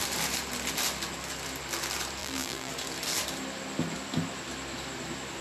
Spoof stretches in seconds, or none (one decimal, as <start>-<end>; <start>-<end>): 2.2-2.7